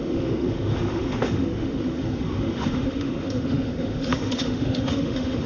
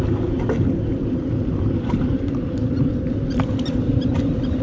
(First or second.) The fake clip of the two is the first